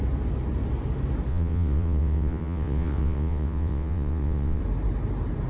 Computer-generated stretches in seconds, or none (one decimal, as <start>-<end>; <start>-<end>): 1.3-4.6